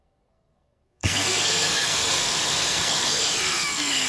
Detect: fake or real fake